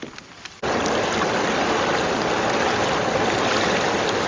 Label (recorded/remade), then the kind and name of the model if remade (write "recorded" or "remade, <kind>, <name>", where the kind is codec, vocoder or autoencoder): recorded